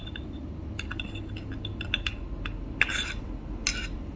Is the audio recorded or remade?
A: recorded